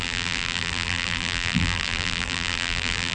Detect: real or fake fake